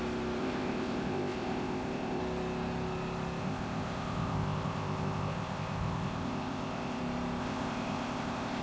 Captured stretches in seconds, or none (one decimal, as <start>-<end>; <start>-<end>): 0.0-0.4; 2.2-3.4; 7.0-7.4